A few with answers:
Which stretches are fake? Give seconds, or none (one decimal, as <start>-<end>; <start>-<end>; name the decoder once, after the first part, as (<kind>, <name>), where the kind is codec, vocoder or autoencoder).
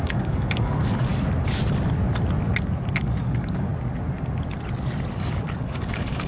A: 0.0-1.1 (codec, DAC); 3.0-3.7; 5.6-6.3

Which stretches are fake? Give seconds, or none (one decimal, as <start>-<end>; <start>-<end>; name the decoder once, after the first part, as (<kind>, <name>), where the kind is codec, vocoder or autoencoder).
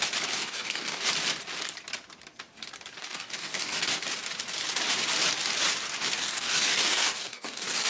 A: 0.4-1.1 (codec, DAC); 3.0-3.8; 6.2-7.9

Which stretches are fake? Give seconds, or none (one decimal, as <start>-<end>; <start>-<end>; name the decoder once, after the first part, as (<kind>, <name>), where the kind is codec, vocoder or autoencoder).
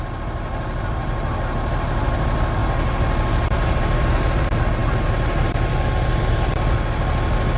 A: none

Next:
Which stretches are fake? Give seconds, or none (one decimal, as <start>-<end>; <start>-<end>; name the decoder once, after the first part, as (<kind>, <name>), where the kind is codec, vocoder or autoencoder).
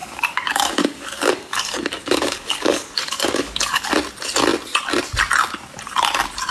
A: 0.0-3.9 (codec, DAC)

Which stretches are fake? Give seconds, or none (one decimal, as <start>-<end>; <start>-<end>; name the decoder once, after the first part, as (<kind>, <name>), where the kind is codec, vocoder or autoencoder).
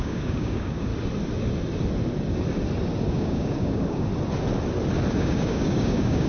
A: 0.0-0.9 (codec, DAC); 3.1-4.1; 5.1-6.3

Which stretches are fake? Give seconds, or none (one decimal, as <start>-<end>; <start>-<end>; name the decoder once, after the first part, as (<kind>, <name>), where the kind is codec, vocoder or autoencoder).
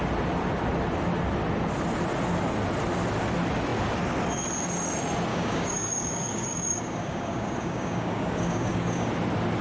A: 5.3-9.1 (codec, DAC)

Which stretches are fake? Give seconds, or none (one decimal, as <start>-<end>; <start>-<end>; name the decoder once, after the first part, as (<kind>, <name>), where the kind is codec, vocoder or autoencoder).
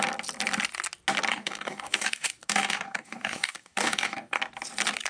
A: 1.3-4.4 (codec, DAC)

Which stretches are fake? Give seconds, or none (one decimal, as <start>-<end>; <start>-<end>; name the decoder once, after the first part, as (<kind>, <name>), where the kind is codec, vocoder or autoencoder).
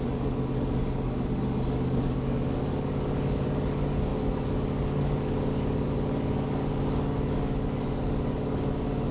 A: 0.0-9.1 (codec, DAC)